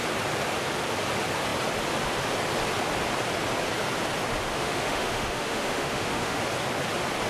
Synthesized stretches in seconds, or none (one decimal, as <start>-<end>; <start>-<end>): 4.5-6.4